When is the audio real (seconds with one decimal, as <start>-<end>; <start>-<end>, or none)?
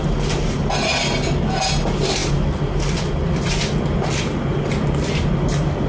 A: 0.0-5.9